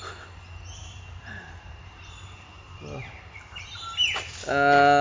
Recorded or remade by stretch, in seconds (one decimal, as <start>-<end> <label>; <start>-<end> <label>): 0.0-0.8 recorded; 0.8-3.8 remade; 3.8-5.0 recorded